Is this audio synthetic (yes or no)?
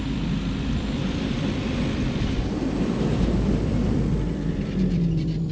yes